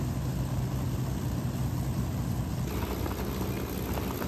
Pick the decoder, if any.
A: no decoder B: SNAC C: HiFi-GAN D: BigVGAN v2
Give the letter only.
A